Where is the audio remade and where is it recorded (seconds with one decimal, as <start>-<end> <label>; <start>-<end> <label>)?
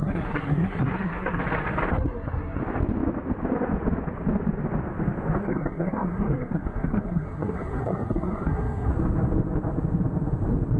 0.0-1.4 remade; 1.4-1.9 recorded; 1.9-2.6 remade; 2.6-5.4 recorded; 5.4-8.9 remade; 8.9-10.8 recorded